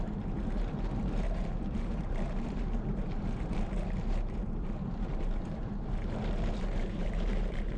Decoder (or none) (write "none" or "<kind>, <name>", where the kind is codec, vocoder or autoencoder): vocoder, BigVGAN v2